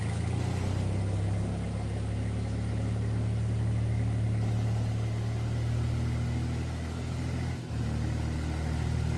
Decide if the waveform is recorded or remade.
recorded